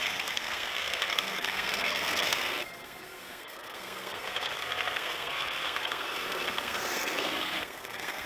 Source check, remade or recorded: remade